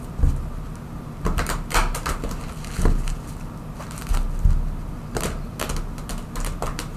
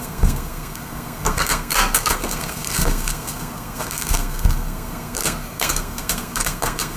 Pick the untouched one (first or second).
first